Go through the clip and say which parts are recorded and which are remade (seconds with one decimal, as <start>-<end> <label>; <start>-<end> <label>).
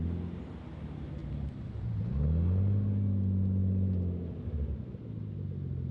0.0-5.9 recorded